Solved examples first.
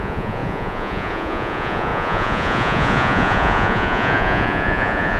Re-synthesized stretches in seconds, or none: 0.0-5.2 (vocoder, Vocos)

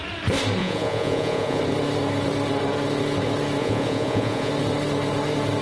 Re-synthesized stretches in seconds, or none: 0.6-1.6 (vocoder, Vocos); 3.6-4.5

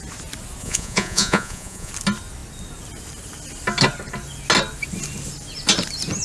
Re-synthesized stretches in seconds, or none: 0.6-1.9 (vocoder, Vocos)

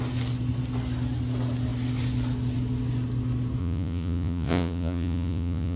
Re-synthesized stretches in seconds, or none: 3.6-5.8 (vocoder, Vocos)

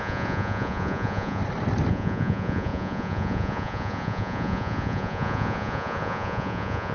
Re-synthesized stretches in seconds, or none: 0.0-1.4 (vocoder, Vocos); 1.9-6.9